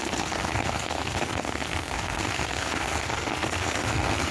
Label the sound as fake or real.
fake